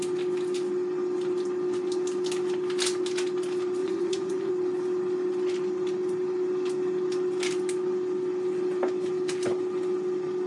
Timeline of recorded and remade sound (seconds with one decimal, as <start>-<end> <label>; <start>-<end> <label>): 0.0-3.8 recorded; 3.8-4.5 remade; 4.5-10.5 recorded